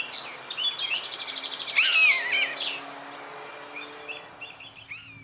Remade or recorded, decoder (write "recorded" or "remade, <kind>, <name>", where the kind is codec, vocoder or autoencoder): recorded